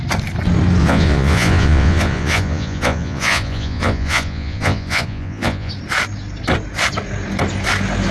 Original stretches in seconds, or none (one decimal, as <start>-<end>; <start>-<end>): 0.0-0.8; 5.7-8.1